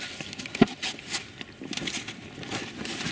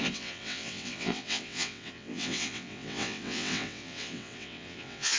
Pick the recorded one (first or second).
first